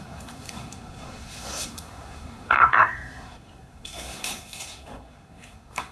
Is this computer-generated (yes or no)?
yes